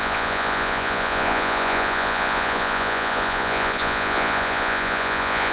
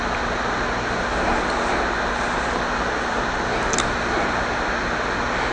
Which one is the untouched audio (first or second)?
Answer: second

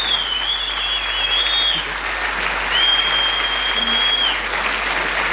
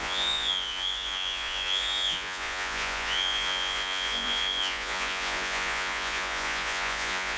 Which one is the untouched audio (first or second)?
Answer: first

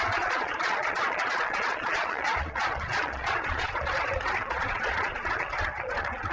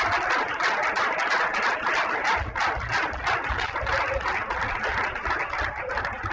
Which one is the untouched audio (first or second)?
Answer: second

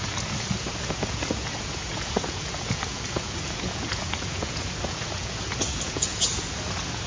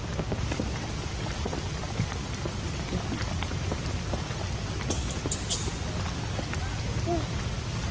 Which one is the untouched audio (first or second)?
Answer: second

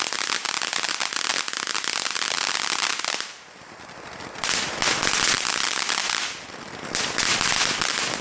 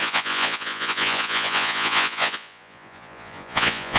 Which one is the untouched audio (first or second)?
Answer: first